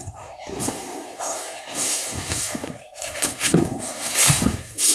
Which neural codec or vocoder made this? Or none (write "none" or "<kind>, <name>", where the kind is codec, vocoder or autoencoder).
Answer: codec, SNAC